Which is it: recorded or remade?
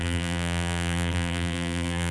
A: remade